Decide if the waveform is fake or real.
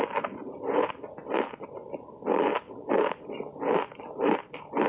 real